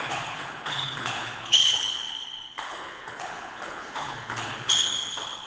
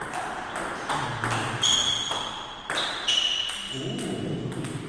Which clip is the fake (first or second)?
first